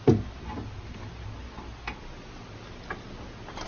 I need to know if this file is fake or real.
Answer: real